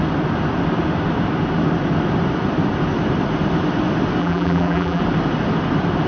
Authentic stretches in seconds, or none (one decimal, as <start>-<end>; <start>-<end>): 0.0-4.2; 5.0-6.1